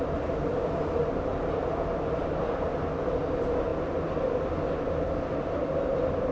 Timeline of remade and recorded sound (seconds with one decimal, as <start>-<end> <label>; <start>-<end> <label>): 0.0-6.3 recorded